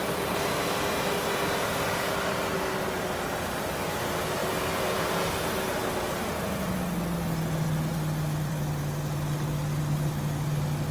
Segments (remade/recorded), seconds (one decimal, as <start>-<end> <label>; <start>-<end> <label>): 0.0-4.4 recorded; 4.4-5.2 remade; 5.2-7.9 recorded; 7.9-9.8 remade; 9.8-10.9 recorded